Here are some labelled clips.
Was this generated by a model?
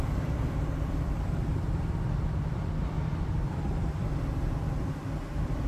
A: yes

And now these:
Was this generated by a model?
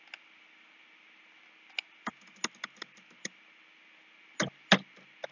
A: no